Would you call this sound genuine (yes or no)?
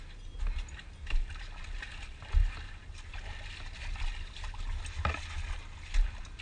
yes